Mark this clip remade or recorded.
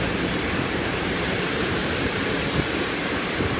remade